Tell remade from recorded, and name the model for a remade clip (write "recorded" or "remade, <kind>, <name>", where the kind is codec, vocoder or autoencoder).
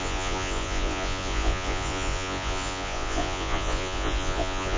remade, vocoder, Vocos